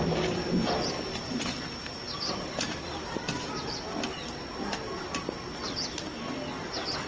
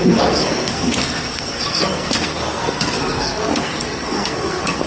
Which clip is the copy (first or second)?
second